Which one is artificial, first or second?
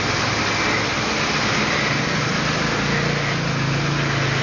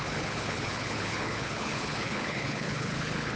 second